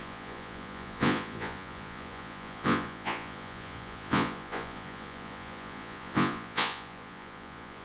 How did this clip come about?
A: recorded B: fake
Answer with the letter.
B